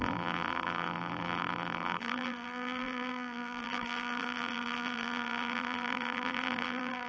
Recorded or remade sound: remade